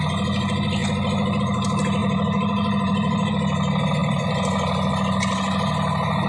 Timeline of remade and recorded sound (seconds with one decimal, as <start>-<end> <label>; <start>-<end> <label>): 0.0-2.0 recorded; 2.0-3.3 remade; 3.3-4.0 recorded; 4.0-4.9 remade; 4.9-6.3 recorded

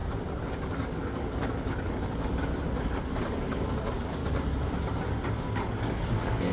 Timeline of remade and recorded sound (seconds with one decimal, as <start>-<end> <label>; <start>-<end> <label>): 0.0-0.6 recorded; 0.6-2.5 remade; 2.5-3.1 recorded; 3.1-4.2 remade; 4.2-5.3 recorded; 5.3-6.5 remade